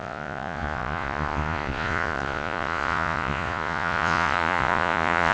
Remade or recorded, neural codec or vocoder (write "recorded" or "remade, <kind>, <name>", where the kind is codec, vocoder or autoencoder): remade, vocoder, Vocos